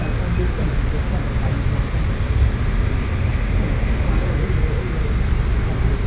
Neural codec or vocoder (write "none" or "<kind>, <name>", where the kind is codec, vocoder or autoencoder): none